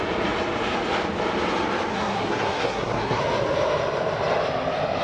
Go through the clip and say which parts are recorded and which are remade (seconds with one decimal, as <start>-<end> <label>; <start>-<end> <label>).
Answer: 0.0-1.9 recorded; 1.9-3.2 remade; 3.2-5.0 recorded